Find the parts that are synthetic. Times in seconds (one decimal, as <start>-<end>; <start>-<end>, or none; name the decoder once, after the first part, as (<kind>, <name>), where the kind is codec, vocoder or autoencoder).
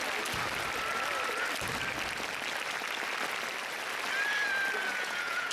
4.9-5.5 (vocoder, Vocos)